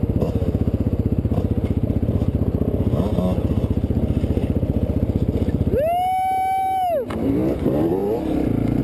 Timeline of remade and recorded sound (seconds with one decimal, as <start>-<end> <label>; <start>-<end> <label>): 0.0-8.8 recorded